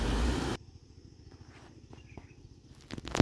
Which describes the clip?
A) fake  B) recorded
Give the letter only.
B